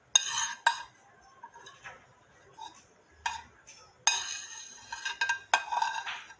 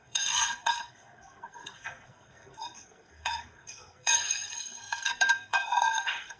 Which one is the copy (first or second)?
second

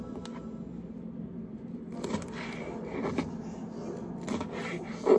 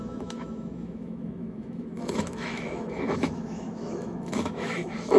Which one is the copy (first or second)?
second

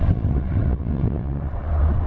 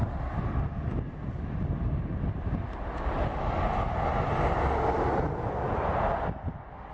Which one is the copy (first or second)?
first